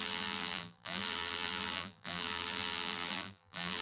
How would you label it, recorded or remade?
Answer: remade